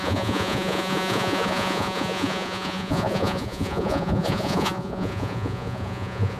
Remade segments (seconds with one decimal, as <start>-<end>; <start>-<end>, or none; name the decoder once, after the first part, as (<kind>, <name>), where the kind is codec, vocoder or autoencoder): 0.0-6.4 (vocoder, Vocos)